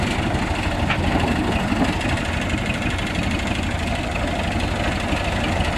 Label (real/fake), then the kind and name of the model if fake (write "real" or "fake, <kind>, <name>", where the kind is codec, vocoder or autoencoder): real